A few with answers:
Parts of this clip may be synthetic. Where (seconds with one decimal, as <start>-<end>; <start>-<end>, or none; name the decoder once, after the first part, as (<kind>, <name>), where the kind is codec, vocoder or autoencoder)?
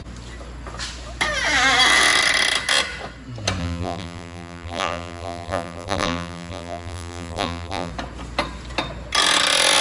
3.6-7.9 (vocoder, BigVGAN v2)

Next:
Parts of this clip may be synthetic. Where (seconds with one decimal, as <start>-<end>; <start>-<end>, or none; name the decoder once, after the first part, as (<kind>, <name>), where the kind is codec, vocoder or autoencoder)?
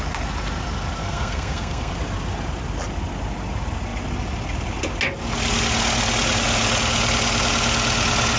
1.0-1.9 (codec, SNAC)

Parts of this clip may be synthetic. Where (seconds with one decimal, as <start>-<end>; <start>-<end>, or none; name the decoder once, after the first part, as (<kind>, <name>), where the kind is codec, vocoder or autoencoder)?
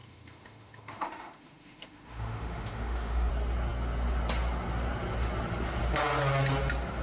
0.0-3.3 (autoencoder, DAC-VAE)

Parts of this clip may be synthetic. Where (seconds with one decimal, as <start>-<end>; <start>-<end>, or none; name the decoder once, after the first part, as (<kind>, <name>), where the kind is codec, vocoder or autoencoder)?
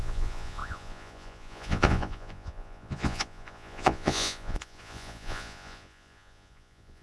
0.0-7.0 (vocoder, Vocos)